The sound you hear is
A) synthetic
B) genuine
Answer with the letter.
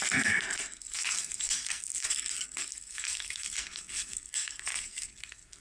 A